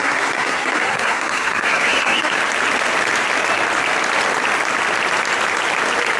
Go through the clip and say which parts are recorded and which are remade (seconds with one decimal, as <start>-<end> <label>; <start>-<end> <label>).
0.0-2.4 remade; 2.4-6.2 recorded